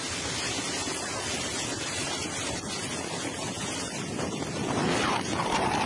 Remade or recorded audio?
recorded